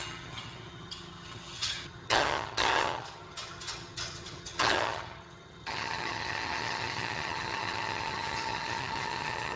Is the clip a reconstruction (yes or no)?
yes